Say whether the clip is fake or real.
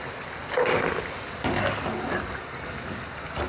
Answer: real